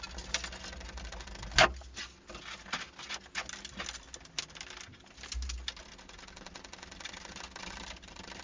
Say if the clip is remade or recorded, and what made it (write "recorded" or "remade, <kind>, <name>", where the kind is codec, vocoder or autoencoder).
recorded